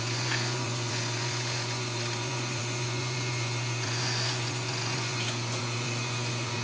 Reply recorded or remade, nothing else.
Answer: remade